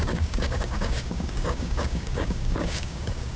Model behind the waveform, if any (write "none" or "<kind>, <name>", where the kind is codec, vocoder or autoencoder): codec, DAC